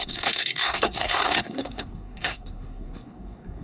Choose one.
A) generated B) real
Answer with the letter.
A